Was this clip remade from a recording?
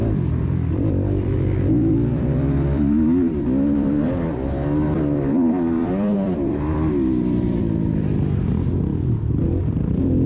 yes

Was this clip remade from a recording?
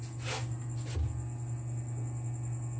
no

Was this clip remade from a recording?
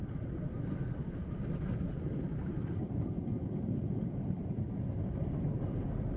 no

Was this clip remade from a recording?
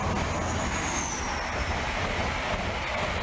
no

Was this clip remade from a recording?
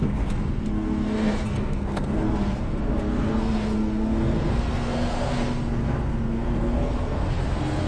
yes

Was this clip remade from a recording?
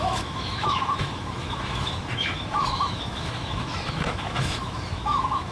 yes